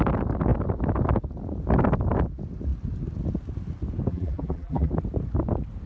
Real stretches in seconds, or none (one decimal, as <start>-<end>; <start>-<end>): 0.0-4.1; 4.9-5.9